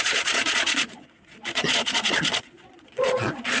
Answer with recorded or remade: remade